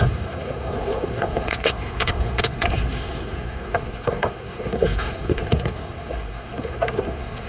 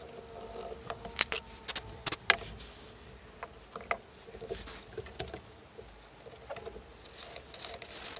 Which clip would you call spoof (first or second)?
first